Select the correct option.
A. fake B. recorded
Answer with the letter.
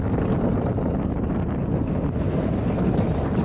B